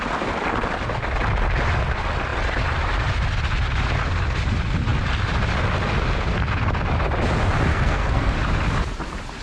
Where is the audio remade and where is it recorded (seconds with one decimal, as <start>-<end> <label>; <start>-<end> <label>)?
0.0-7.7 recorded; 7.7-8.3 remade; 8.3-9.4 recorded